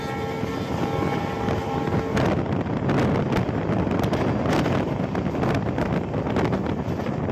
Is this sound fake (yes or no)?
no